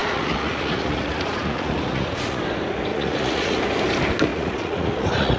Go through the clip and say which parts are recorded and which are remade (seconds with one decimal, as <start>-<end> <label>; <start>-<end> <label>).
0.0-2.4 remade; 2.4-2.9 recorded; 2.9-3.6 remade; 3.6-4.3 recorded; 4.3-5.4 remade